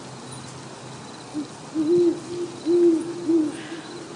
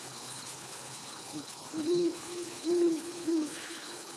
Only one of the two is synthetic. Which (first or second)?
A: second